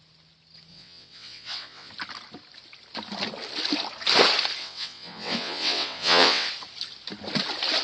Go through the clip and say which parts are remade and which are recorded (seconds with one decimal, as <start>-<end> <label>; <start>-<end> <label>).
0.0-0.7 recorded; 0.7-1.9 remade; 1.9-4.6 recorded; 4.6-6.5 remade; 6.5-7.8 recorded